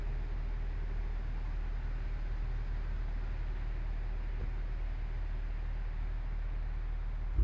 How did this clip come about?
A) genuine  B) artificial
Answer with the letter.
A